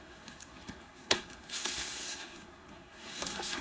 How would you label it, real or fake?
fake